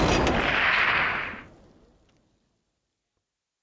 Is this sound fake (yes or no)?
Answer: no